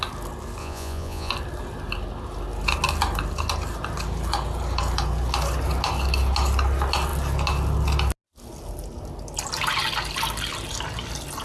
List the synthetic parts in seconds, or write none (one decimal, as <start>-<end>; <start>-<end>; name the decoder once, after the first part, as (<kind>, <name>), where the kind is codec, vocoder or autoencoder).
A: 0.6-1.3 (vocoder, Vocos)